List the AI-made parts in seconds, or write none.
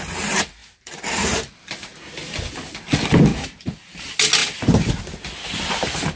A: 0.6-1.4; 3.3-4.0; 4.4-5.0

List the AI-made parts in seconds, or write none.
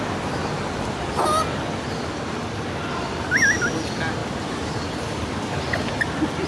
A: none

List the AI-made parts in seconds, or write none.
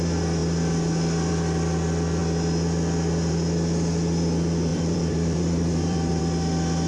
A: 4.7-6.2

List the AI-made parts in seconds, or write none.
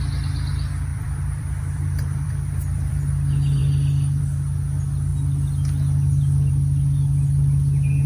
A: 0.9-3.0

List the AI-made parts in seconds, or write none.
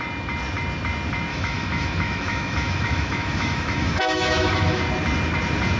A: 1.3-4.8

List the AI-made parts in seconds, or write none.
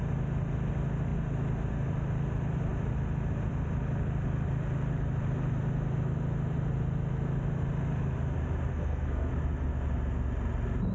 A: 8.7-9.3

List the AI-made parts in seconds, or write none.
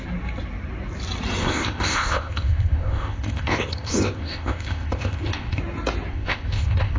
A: 1.4-5.6; 6.1-7.0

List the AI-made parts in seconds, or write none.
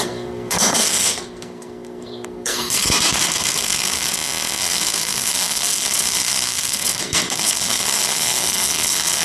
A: 0.0-4.1; 4.6-9.2